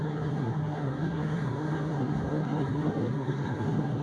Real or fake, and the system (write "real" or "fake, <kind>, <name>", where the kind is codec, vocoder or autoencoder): fake, codec, SNAC